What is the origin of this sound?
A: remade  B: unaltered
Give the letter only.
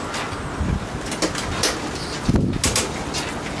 B